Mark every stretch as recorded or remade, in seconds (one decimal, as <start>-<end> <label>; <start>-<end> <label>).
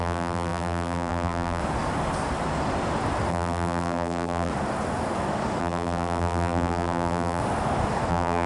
0.0-1.6 remade; 1.6-3.3 recorded; 3.3-4.5 remade; 4.5-5.6 recorded; 5.6-7.4 remade; 7.4-8.1 recorded; 8.1-8.5 remade